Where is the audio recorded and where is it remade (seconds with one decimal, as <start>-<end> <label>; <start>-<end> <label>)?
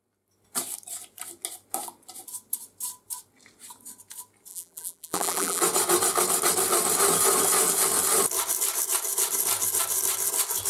0.0-4.5 recorded; 4.5-5.6 remade; 5.6-10.7 recorded